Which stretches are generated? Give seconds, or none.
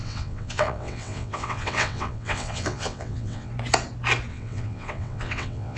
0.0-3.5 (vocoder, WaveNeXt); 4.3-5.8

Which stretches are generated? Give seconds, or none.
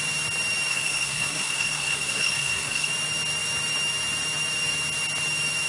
0.7-2.9 (codec, SNAC)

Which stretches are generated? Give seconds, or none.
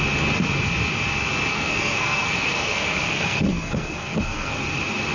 1.5-4.6 (codec, SNAC)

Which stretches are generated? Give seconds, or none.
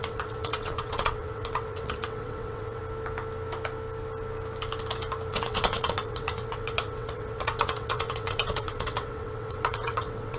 0.0-2.8 (vocoder, WaveNeXt); 5.3-10.4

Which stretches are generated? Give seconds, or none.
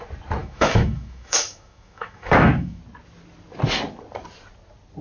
0.4-2.8 (autoencoder, DAC-VAE)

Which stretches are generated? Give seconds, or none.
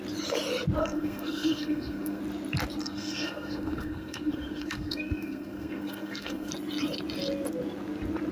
0.8-2.2 (codec, SNAC); 2.8-6.5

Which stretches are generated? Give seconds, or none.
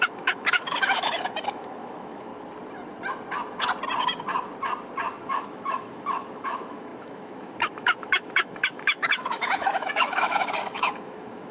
0.0-2.3 (autoencoder, DAC-VAE); 5.3-11.5